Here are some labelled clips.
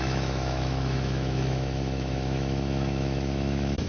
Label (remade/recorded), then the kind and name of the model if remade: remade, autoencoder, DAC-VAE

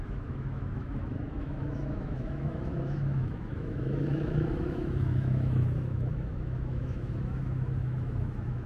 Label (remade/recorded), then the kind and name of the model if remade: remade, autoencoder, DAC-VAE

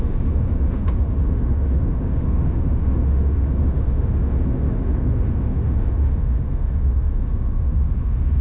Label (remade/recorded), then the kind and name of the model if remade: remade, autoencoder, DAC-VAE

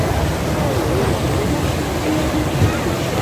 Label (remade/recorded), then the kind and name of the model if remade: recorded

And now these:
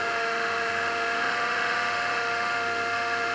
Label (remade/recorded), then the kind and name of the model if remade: remade, autoencoder, DAC-VAE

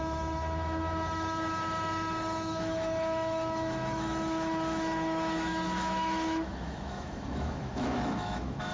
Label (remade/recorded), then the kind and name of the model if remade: remade, autoencoder, DAC-VAE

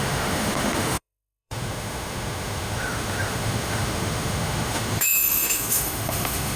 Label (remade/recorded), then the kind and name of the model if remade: remade, autoencoder, DAC-VAE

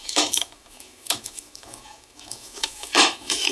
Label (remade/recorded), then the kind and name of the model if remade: remade, autoencoder, DAC-VAE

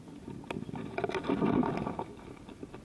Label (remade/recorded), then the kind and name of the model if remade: recorded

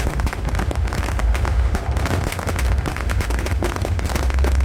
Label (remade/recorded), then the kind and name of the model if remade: remade, autoencoder, DAC-VAE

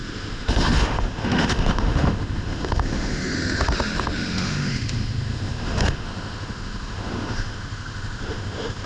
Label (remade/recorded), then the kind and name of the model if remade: remade, autoencoder, DAC-VAE